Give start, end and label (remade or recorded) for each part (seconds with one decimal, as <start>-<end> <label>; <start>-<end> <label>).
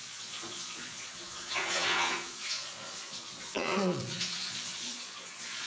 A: 0.0-5.7 remade